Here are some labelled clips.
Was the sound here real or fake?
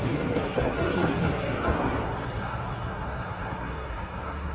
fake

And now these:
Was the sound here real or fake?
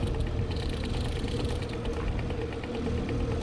real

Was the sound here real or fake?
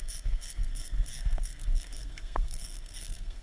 fake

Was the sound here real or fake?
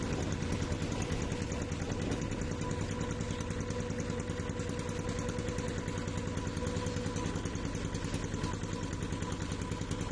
real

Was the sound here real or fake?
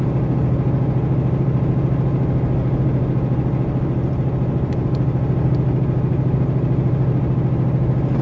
real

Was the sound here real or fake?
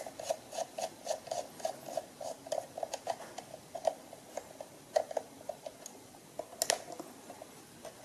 real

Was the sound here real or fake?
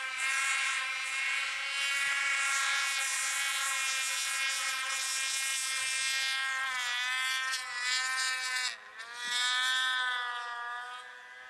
real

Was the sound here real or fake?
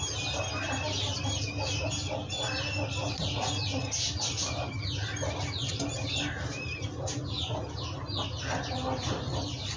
real